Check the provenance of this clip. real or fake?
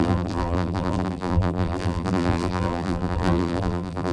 fake